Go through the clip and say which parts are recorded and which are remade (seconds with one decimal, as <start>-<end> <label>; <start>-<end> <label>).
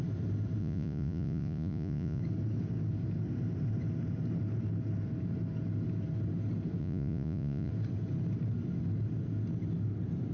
0.0-0.6 recorded; 0.6-2.2 remade; 2.2-6.8 recorded; 6.8-7.7 remade; 7.7-10.3 recorded